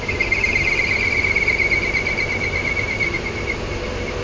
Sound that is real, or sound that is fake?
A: fake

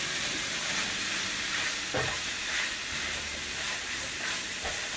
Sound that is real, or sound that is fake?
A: real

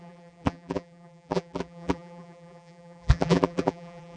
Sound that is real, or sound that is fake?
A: fake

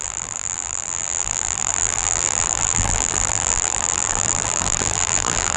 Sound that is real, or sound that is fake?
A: fake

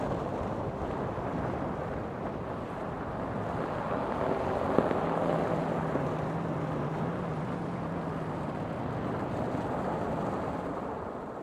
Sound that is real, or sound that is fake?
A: real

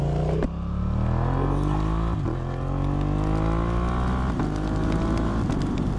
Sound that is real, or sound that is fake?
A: real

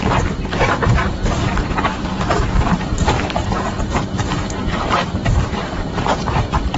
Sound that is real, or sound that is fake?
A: fake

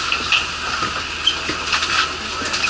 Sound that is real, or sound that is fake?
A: real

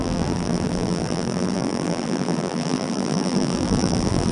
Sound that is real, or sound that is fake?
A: fake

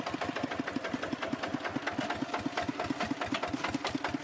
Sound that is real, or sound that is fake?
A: real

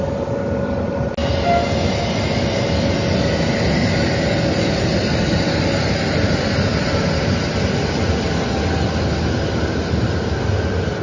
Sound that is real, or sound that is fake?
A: real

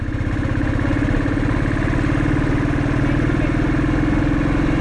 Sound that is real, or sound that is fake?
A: real